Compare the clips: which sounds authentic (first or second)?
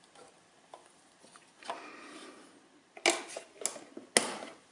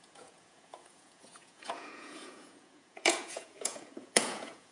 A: first